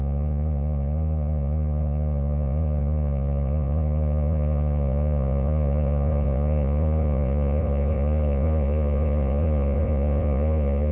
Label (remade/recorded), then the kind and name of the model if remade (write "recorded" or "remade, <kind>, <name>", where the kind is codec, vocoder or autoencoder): remade, vocoder, Vocos